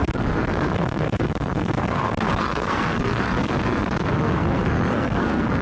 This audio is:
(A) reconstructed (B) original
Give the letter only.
A